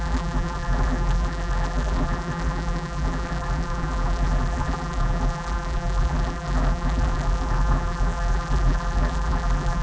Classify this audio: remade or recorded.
remade